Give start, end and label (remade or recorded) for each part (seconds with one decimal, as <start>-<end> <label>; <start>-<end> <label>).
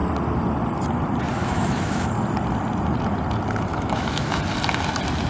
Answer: 0.0-1.4 recorded; 1.4-2.1 remade; 2.1-3.7 recorded; 3.7-4.4 remade; 4.4-5.3 recorded